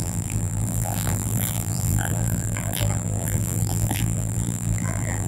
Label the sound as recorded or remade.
remade